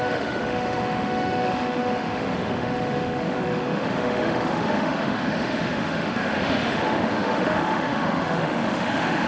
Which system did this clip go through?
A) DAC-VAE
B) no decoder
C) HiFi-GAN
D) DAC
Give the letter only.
A